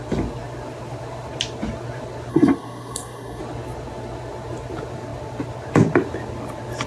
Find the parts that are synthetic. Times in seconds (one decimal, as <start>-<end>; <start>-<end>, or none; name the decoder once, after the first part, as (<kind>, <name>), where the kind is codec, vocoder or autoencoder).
2.3-3.4 (codec, SNAC)